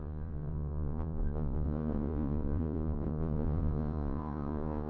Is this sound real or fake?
fake